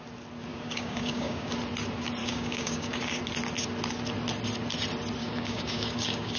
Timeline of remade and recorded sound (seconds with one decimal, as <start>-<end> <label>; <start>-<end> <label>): 0.0-0.5 recorded; 0.5-1.5 remade; 1.5-2.2 recorded; 2.2-3.2 remade; 3.2-5.2 recorded; 5.2-6.4 remade